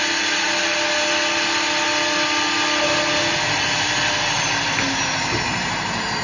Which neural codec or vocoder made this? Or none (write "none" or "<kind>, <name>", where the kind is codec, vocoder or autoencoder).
none